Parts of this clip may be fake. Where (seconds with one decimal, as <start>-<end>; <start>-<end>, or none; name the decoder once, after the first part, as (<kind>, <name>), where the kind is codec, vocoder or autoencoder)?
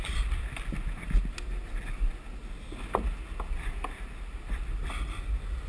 none